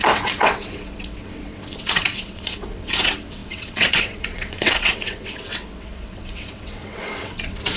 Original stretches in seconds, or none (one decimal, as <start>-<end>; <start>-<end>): none